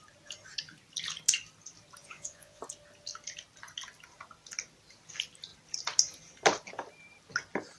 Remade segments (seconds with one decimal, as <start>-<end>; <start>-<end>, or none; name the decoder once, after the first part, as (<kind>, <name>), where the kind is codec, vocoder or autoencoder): 2.0-2.6 (vocoder, Vocos)